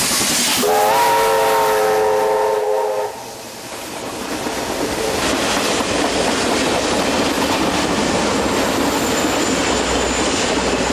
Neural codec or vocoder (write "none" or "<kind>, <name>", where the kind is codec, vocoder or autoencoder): none